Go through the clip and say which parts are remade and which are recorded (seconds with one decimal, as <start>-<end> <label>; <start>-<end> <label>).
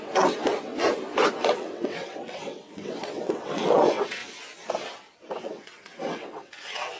0.0-0.7 remade; 0.7-1.3 recorded; 1.3-4.2 remade; 4.2-5.3 recorded; 5.3-7.0 remade